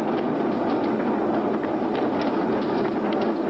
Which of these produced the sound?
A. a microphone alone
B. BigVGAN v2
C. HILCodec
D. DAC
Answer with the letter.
A